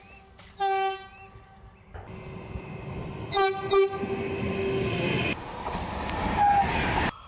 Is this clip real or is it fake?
real